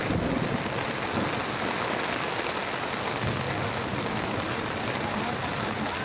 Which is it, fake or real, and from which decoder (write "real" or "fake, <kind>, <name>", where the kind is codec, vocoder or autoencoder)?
real